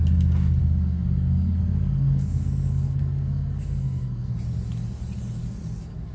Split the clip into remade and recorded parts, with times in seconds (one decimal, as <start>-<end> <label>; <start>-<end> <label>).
0.0-0.6 recorded; 0.6-4.3 remade; 4.3-6.1 recorded